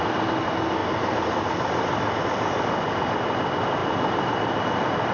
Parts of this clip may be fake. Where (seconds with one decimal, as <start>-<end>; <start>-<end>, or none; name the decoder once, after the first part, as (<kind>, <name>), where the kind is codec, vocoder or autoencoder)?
3.8-4.6 (vocoder, BigVGAN v2)